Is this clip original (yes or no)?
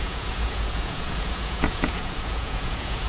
no